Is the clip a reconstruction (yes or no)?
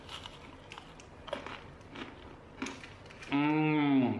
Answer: no